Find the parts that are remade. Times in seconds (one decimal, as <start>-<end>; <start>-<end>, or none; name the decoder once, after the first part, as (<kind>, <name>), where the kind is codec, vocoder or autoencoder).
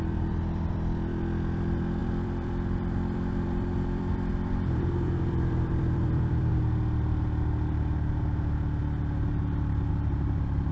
0.0-6.5 (vocoder, BigVGAN v2); 9.9-10.7